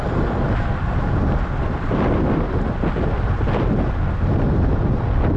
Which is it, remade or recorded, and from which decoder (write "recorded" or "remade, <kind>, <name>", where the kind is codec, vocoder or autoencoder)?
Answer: recorded